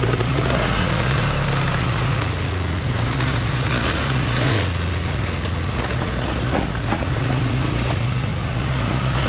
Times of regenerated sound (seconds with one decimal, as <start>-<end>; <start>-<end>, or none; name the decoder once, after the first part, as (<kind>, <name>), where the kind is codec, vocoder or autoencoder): 0.0-1.2 (vocoder, Vocos); 1.8-9.3